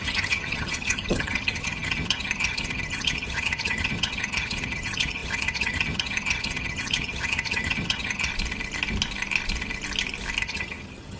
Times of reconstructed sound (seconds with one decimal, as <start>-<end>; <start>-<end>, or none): 0.0-8.3; 10.4-11.2